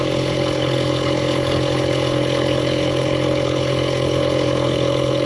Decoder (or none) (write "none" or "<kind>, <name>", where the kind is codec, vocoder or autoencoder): codec, HILCodec